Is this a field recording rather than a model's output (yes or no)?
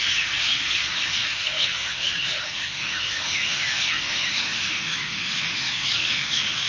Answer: no